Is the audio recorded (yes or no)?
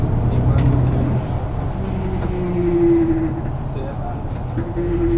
yes